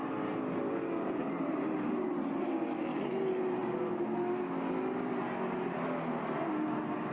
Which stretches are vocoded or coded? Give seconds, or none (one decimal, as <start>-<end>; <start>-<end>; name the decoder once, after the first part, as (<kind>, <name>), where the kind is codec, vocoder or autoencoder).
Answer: 0.9-3.6 (vocoder, BigVGAN v2)